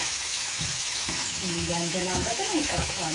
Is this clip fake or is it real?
fake